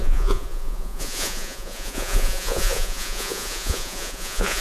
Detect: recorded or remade remade